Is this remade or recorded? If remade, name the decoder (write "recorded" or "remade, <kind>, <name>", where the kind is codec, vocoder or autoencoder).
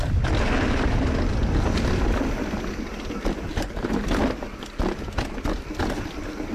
recorded